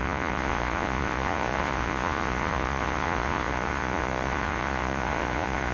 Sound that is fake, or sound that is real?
fake